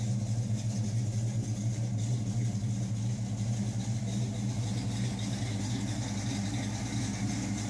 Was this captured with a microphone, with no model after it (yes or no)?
yes